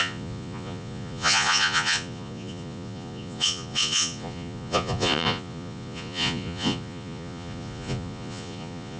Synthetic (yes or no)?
yes